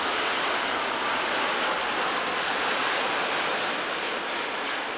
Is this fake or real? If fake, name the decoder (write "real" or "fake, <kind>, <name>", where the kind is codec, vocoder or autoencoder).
real